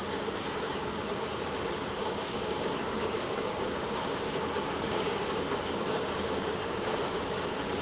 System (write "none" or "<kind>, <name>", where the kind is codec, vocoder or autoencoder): codec, DAC